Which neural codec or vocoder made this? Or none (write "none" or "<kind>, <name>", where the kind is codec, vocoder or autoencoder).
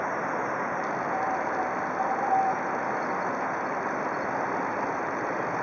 none